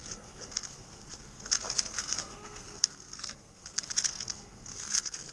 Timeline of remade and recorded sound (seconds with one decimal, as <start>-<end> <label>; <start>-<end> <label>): 0.0-5.3 remade